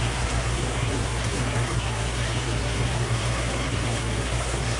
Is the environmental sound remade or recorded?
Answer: remade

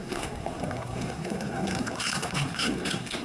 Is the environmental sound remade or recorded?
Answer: remade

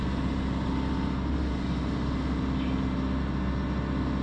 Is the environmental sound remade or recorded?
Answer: recorded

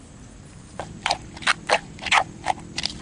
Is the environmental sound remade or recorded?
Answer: recorded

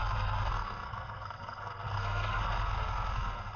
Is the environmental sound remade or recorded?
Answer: remade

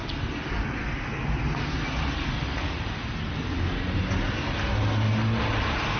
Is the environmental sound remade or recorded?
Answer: recorded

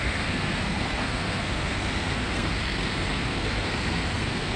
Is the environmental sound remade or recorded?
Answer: remade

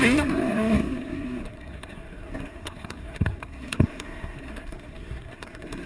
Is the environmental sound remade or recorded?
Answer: remade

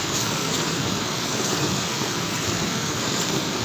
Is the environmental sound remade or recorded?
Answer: remade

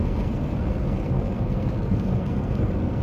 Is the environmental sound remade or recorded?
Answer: remade